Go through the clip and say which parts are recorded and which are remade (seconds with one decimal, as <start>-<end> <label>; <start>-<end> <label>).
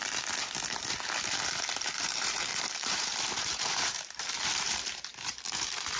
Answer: 0.0-1.8 recorded; 1.8-6.0 remade